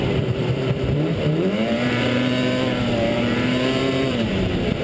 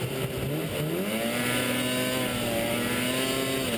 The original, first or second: second